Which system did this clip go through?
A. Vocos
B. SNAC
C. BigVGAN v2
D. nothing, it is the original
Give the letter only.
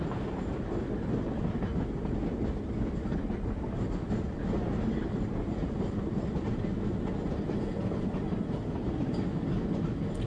D